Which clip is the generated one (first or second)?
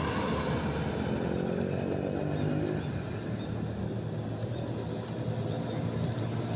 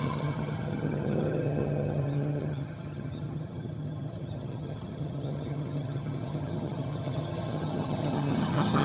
second